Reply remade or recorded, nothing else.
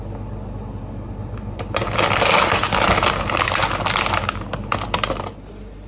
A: recorded